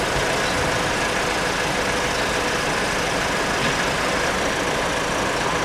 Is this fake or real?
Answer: real